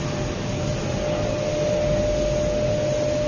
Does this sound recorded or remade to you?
recorded